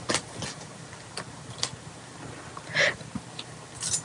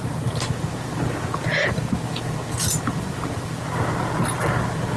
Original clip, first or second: second